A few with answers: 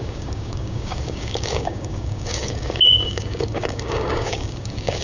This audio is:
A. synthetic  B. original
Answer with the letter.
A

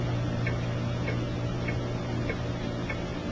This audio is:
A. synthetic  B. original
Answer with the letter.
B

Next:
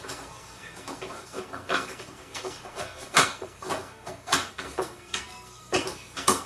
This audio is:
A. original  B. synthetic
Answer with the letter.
B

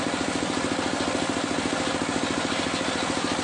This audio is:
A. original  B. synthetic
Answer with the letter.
A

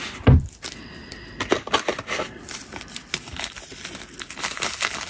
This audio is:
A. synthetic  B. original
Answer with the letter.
B